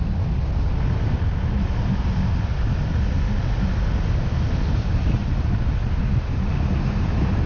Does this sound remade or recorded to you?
recorded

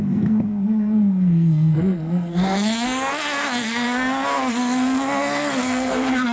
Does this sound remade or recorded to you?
remade